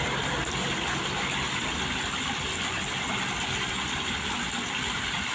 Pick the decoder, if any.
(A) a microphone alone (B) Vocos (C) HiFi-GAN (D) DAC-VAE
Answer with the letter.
A